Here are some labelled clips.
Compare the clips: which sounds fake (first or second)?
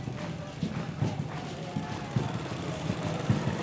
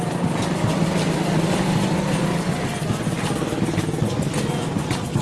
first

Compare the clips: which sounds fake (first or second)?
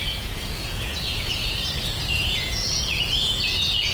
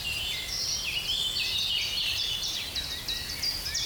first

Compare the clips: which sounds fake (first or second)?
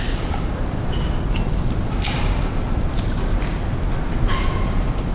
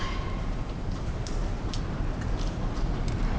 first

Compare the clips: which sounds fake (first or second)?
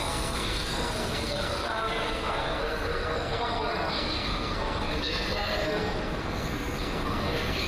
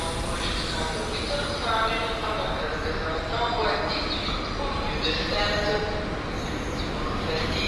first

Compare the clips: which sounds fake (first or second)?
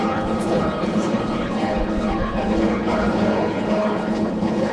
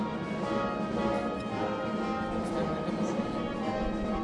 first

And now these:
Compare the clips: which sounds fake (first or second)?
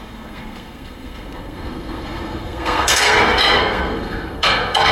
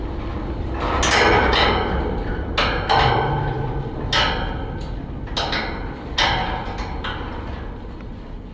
first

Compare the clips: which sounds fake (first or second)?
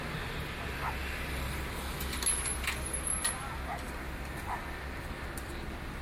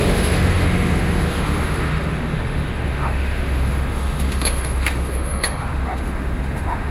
second